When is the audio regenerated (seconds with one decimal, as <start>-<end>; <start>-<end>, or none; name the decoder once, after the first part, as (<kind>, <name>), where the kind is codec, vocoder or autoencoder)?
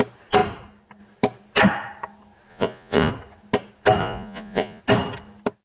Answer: 2.5-3.1 (vocoder, Vocos); 4.0-4.8